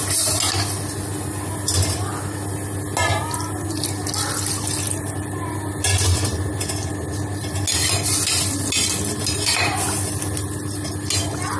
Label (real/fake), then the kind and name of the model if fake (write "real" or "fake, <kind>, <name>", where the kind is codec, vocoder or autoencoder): real